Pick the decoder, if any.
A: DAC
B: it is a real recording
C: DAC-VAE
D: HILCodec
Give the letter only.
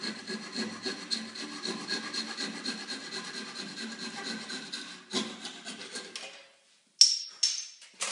B